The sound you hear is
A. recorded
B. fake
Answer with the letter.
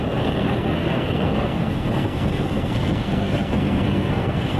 B